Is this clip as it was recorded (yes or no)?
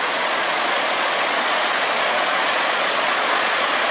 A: no